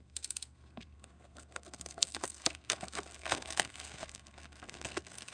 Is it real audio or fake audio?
fake